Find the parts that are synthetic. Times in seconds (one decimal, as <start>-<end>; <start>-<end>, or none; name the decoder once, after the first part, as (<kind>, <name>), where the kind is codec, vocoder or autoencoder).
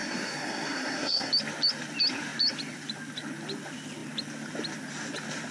0.0-1.3 (codec, SNAC)